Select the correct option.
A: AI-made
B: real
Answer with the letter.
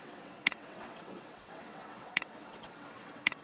A